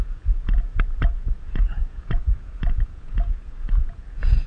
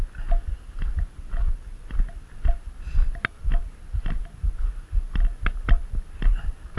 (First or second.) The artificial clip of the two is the first